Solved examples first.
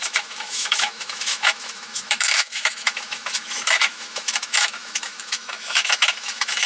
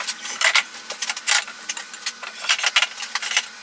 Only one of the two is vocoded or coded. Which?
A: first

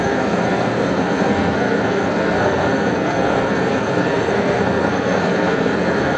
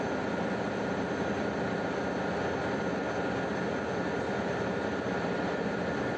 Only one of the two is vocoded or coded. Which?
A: first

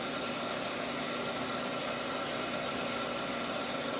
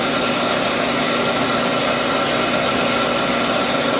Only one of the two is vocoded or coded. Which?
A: first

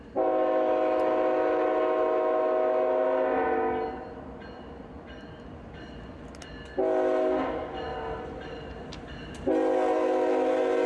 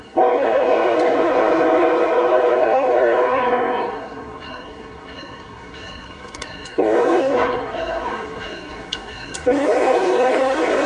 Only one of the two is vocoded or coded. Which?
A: second